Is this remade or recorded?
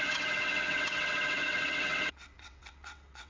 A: remade